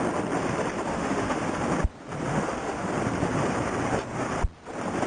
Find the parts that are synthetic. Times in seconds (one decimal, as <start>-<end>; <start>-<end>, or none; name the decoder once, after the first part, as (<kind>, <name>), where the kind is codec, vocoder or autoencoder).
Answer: 0.9-1.4 (autoencoder, DAC-VAE); 2.3-2.9